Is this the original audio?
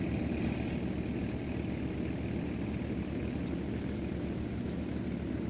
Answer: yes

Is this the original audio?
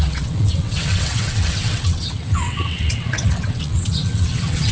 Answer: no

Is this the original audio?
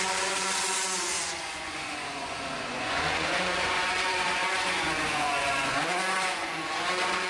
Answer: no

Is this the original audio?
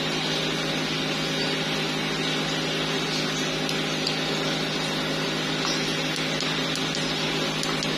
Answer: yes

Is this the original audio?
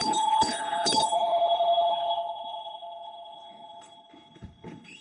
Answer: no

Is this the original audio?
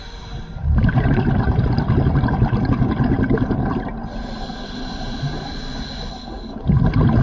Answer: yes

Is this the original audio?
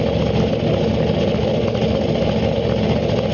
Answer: yes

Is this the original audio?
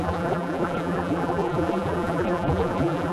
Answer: no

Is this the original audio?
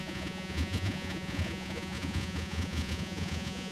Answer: no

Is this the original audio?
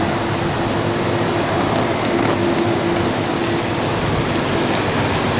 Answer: yes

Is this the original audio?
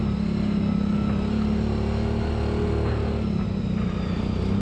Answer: yes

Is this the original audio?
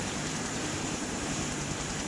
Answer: no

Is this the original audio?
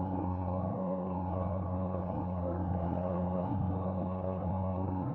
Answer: no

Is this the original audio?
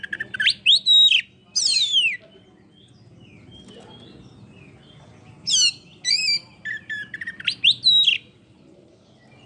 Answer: yes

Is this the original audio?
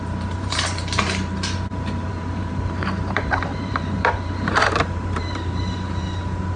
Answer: no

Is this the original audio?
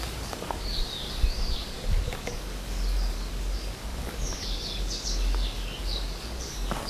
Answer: no